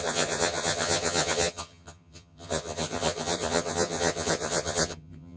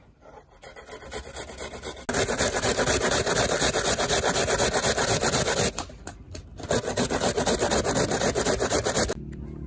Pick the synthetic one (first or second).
first